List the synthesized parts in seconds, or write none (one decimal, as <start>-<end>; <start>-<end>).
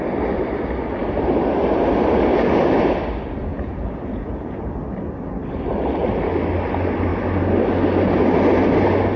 3.5-4.7